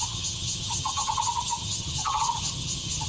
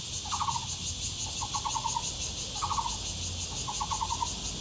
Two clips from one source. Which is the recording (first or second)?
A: second